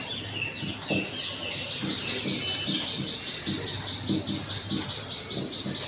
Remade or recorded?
recorded